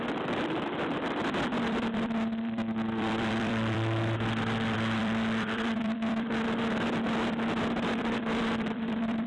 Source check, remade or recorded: remade